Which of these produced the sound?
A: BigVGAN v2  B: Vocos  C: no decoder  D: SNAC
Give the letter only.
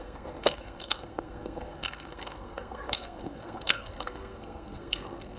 D